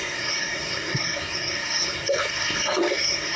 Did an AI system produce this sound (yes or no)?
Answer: yes